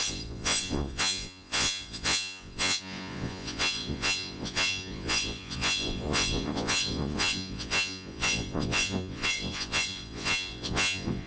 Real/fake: fake